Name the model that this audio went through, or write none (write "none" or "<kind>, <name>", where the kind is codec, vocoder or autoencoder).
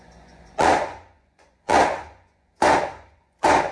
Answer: vocoder, Vocos